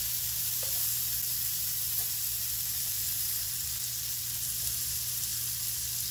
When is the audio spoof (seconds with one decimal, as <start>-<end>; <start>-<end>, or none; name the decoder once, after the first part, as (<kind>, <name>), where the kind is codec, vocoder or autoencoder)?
2.2-3.8 (vocoder, BigVGAN v2)